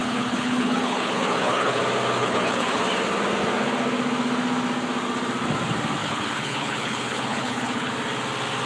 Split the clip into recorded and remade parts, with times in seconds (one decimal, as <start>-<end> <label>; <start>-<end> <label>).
0.0-1.8 remade; 1.8-2.2 recorded; 2.2-2.8 remade; 2.8-6.0 recorded; 6.0-7.9 remade; 7.9-8.7 recorded